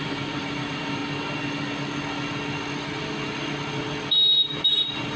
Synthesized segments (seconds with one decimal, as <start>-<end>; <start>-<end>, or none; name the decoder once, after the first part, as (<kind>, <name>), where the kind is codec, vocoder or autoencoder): 0.0-1.0 (vocoder, BigVGAN v2); 4.1-5.2